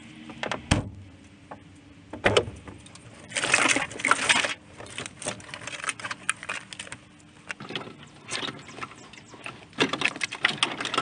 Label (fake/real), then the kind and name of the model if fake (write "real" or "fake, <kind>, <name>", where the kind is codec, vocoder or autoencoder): real